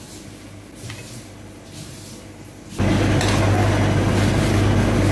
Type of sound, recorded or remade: recorded